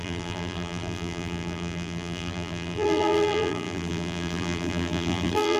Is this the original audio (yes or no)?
no